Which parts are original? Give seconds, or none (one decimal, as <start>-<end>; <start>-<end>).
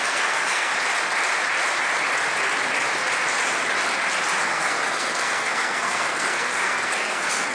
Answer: 0.7-4.4